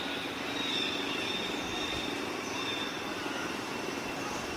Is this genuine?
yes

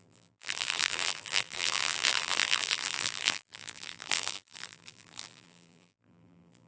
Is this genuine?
no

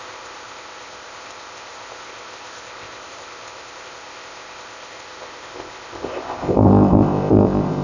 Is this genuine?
no